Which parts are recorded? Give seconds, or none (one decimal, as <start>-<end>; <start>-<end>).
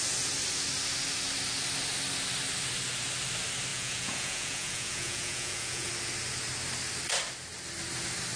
0.0-3.7; 5.9-8.4